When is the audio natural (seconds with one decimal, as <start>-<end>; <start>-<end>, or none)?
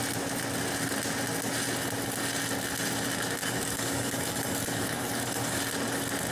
0.0-3.4; 5.6-6.3